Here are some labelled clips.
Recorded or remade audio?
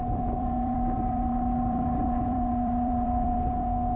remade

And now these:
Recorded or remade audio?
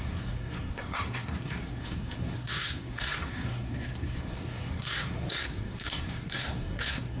remade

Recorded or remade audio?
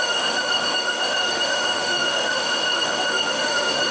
remade